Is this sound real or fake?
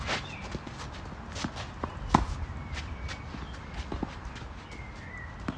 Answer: real